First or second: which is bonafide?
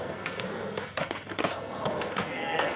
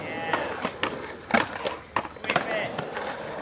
second